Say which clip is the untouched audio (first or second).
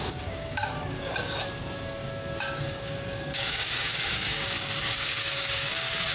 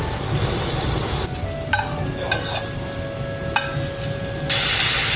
second